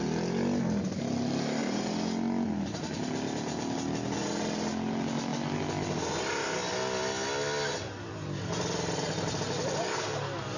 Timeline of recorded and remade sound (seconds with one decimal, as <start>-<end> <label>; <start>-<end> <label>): 0.0-10.6 recorded